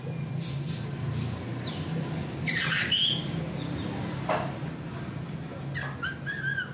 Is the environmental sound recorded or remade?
recorded